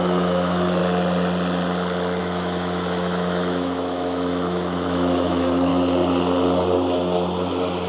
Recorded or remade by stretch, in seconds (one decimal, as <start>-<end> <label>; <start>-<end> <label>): 0.0-0.8 remade; 0.8-2.2 recorded; 2.2-5.7 remade; 5.7-7.9 recorded